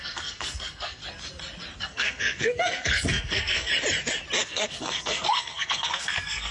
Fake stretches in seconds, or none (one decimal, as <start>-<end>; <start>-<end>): 0.0-1.0; 1.8-3.7; 4.4-6.5